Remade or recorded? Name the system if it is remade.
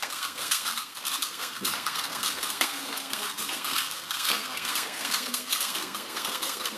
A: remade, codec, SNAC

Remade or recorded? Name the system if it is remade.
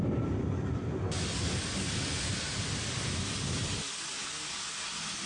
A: recorded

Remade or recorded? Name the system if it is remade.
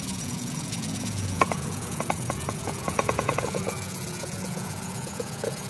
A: remade, vocoder, Vocos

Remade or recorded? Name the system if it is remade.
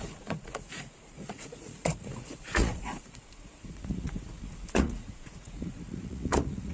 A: remade, vocoder, Vocos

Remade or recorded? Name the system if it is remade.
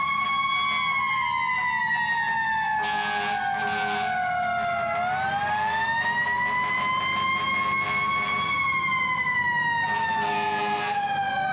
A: recorded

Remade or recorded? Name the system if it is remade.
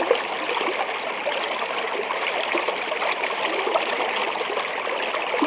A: recorded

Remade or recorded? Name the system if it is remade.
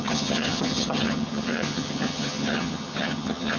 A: remade, vocoder, HiFi-GAN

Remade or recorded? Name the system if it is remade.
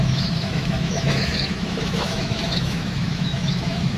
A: remade, autoencoder, DAC-VAE